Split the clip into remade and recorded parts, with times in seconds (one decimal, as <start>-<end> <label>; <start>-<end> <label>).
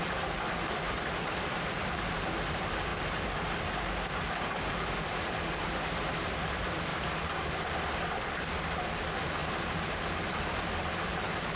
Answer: 0.0-6.9 remade; 6.9-8.3 recorded; 8.3-11.6 remade